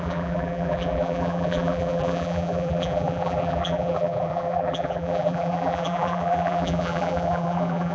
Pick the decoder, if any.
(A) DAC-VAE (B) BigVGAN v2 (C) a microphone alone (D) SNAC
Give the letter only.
B